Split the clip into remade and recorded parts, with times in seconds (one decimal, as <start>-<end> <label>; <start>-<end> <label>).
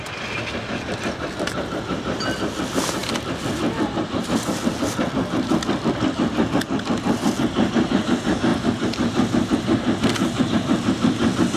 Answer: 0.0-11.6 recorded